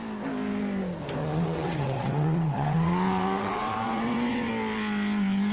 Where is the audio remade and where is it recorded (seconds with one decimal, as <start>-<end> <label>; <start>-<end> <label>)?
0.0-1.2 recorded; 1.2-4.5 remade; 4.5-5.5 recorded